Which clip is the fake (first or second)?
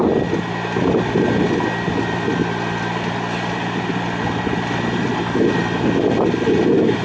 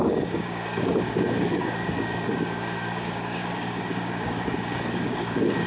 second